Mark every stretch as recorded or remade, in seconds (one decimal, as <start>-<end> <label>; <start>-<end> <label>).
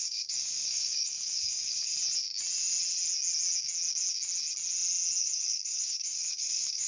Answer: 0.0-1.9 remade; 1.9-5.2 recorded; 5.2-6.9 remade